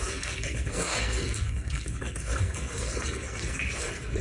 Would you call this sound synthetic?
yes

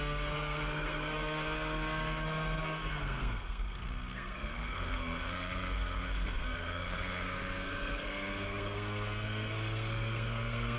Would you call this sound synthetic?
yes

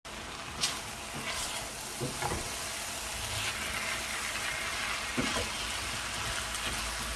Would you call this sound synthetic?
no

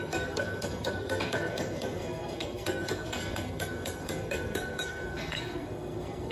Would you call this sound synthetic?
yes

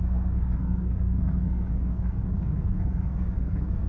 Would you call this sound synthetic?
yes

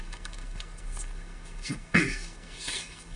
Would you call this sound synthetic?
yes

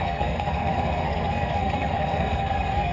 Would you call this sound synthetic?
yes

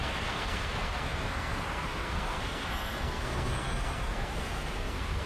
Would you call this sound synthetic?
yes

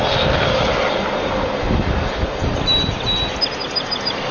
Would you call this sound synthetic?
no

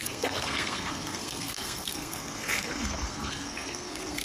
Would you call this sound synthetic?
yes